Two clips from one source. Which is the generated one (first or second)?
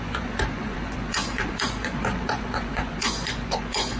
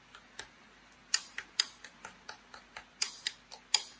first